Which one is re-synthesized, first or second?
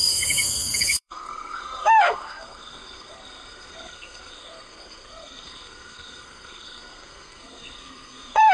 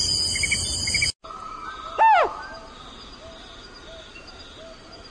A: first